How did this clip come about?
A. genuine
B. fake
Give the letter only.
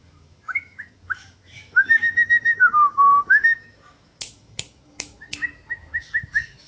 B